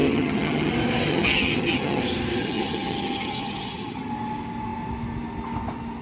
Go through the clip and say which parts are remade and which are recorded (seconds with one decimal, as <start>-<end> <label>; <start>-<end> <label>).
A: 0.0-0.7 remade; 0.7-1.1 recorded; 1.1-2.0 remade; 2.0-2.4 recorded; 2.4-4.1 remade; 4.1-6.0 recorded

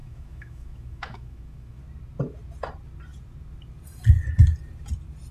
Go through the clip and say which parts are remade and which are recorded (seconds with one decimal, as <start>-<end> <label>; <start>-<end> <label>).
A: 0.0-1.8 remade; 1.8-5.3 recorded

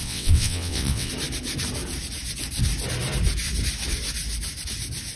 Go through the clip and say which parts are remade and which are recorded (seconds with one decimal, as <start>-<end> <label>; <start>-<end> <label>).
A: 0.0-1.1 remade; 1.1-5.2 recorded

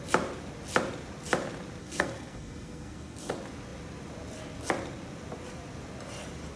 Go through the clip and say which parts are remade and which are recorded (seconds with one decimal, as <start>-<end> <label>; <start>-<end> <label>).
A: 0.0-1.8 recorded; 1.8-3.3 remade; 3.3-6.6 recorded

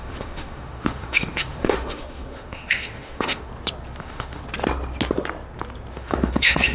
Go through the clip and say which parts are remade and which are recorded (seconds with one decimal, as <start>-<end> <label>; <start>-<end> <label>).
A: 0.0-3.5 remade; 3.5-4.0 recorded; 4.0-4.4 remade; 4.4-5.9 recorded; 5.9-6.7 remade

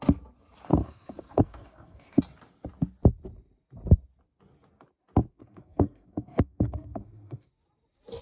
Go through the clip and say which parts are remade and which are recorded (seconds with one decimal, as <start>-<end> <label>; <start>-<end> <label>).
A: 0.0-0.7 recorded; 0.7-2.2 remade; 2.2-5.3 recorded; 5.3-7.5 remade; 7.5-8.2 recorded

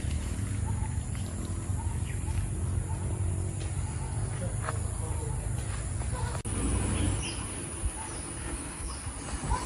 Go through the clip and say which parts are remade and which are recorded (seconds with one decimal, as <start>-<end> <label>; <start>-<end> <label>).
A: 0.0-8.4 recorded; 8.4-8.9 remade; 8.9-9.7 recorded

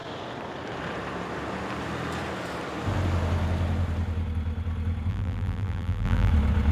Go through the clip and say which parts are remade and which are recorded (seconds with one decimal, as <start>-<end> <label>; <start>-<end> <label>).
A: 0.0-5.1 recorded; 5.1-6.3 remade; 6.3-6.7 recorded